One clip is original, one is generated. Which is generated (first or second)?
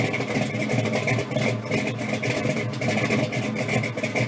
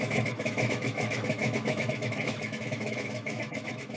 second